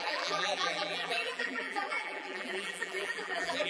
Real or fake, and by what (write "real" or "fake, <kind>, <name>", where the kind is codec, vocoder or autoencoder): fake, vocoder, BigVGAN v2